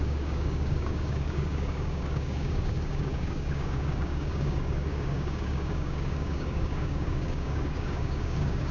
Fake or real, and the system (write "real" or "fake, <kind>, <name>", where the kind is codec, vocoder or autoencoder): fake, codec, DAC